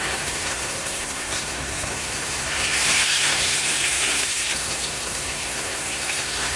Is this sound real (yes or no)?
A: no